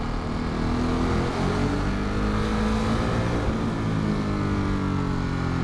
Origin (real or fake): real